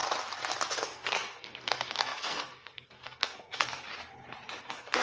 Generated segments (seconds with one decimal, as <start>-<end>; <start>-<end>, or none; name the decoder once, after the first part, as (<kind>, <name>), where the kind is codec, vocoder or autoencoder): 0.7-3.9 (codec, SNAC); 4.6-5.0